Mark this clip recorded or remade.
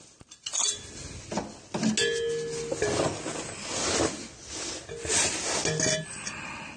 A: recorded